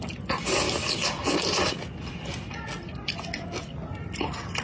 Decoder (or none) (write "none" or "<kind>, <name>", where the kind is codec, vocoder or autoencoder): none